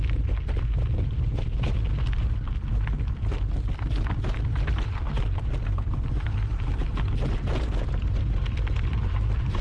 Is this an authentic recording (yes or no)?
yes